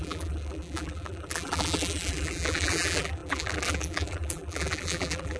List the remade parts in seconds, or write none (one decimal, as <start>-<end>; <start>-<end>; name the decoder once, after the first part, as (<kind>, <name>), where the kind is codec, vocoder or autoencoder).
0.0-5.4 (vocoder, BigVGAN v2)